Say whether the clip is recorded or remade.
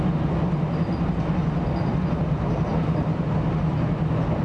recorded